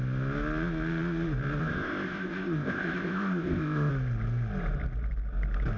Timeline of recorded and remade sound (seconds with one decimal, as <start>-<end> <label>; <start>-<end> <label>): 0.0-1.6 recorded; 1.6-3.9 remade; 3.9-5.8 recorded